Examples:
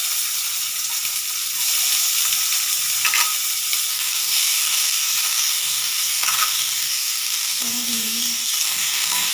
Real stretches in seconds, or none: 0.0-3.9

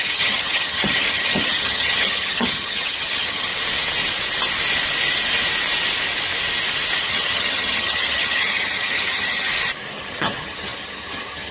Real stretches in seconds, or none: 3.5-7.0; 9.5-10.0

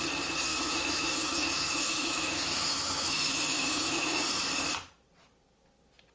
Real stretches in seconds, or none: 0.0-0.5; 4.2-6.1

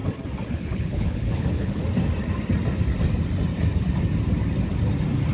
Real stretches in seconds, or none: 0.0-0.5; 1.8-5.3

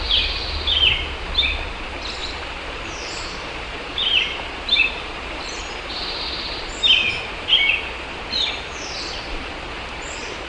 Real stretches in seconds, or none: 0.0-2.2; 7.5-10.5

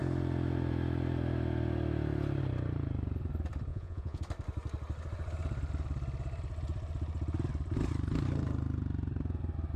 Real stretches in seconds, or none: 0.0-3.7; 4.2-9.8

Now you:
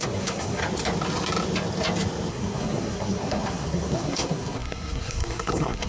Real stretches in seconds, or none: 0.6-2.3